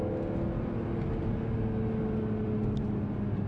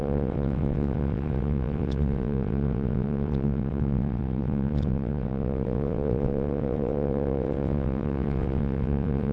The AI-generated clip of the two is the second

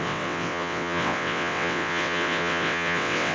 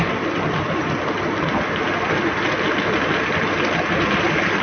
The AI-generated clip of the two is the first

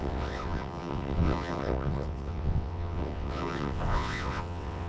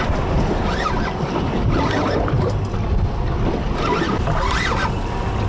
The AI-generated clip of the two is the first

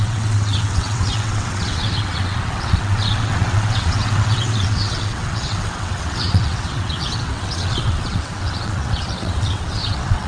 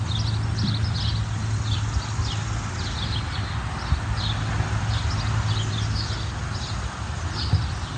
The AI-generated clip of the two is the first